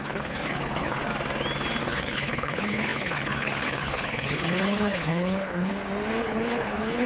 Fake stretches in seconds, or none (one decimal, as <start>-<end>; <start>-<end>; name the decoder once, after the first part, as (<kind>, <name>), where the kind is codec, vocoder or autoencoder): 0.0-1.1 (codec, HILCodec); 1.8-5.7; 6.2-7.1